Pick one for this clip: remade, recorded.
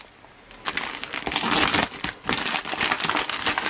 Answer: recorded